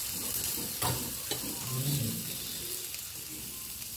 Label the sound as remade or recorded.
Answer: recorded